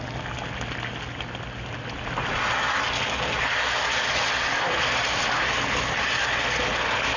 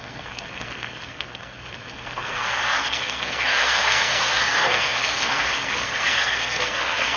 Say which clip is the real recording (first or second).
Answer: first